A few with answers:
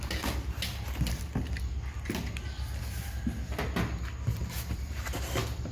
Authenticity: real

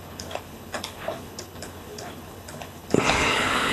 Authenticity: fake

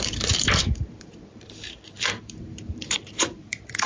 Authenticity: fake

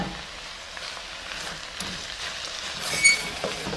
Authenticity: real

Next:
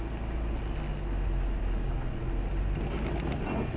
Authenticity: real